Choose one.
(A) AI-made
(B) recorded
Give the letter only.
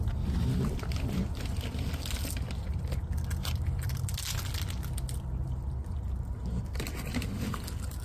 B